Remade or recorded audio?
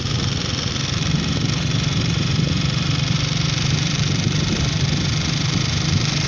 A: remade